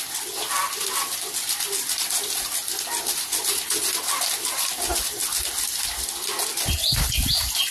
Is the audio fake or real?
real